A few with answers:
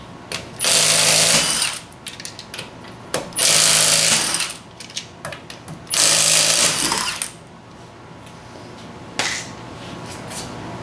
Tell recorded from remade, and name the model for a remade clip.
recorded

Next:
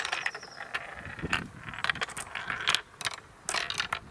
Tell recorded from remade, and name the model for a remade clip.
recorded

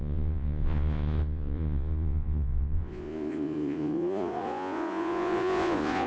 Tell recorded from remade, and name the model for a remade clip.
remade, vocoder, Vocos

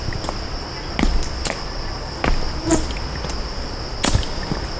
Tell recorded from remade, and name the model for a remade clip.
recorded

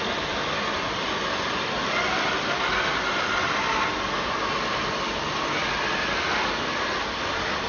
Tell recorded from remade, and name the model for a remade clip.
recorded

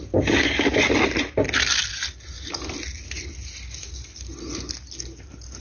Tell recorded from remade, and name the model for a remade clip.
recorded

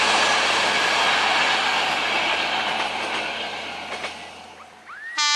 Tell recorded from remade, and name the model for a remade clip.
recorded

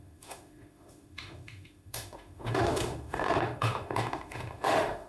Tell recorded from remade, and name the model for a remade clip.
remade, autoencoder, DAC-VAE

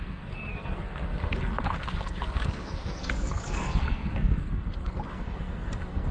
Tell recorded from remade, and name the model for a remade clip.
remade, codec, SNAC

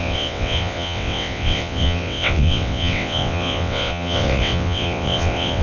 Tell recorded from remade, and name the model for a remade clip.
remade, vocoder, WaveNeXt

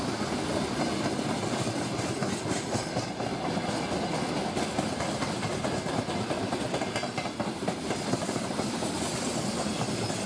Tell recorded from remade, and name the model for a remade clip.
recorded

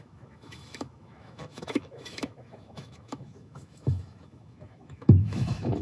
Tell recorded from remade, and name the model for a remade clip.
remade, autoencoder, DAC-VAE